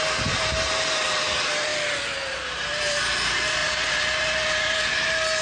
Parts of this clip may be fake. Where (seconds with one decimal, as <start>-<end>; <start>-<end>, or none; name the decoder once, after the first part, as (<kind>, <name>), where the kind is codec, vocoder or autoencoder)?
0.0-5.4 (vocoder, BigVGAN v2)